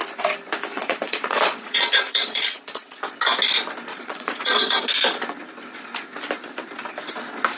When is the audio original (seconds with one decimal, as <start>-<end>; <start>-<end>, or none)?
0.0-0.7; 3.0-3.9; 4.8-7.6